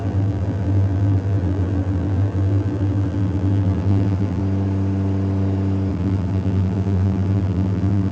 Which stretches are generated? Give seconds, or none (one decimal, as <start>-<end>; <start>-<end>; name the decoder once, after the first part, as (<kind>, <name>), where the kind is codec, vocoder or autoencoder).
0.0-4.4 (vocoder, BigVGAN v2); 5.9-8.1

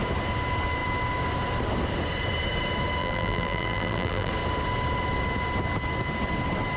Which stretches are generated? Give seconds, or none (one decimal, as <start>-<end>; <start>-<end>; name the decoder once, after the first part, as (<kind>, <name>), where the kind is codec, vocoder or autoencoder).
3.0-4.3 (vocoder, BigVGAN v2)

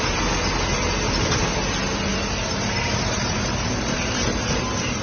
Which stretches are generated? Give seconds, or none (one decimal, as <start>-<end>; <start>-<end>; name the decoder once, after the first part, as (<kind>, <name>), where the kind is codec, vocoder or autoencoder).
2.1-4.6 (vocoder, BigVGAN v2)

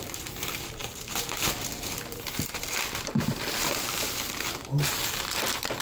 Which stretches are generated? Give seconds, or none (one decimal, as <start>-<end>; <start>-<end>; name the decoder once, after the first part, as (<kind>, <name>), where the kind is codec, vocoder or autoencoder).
0.0-5.8 (vocoder, BigVGAN v2)